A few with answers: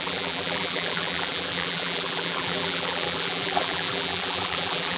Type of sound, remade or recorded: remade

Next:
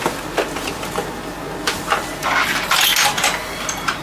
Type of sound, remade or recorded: recorded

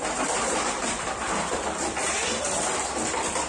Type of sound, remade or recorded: remade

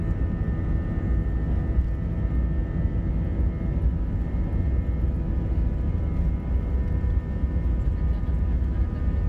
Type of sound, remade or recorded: recorded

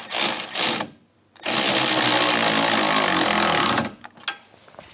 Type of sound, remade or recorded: recorded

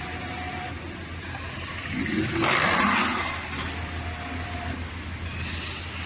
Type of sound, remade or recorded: recorded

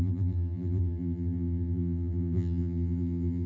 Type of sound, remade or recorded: remade